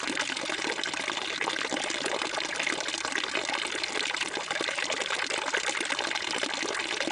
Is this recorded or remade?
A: recorded